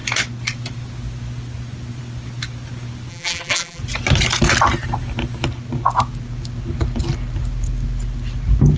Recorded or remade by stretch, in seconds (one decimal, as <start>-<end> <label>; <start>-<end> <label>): 0.0-3.1 recorded; 3.1-3.8 remade; 3.8-8.8 recorded